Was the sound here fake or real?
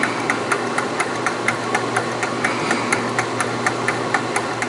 real